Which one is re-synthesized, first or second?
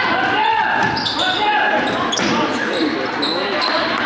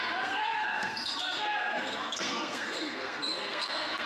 second